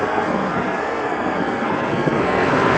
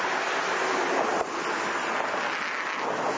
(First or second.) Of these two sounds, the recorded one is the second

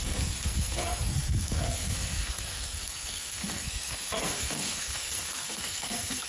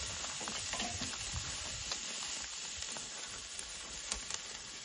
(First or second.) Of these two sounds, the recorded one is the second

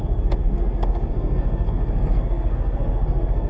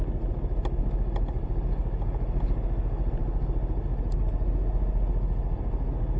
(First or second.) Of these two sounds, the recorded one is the second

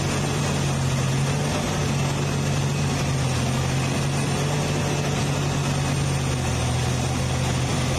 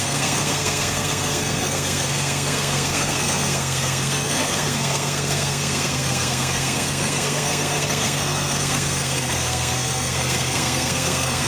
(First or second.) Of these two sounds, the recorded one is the first